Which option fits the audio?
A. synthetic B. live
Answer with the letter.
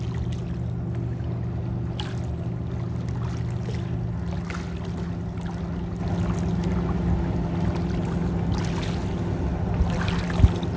B